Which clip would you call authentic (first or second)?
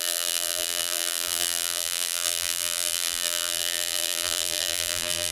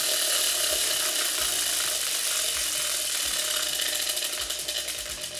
second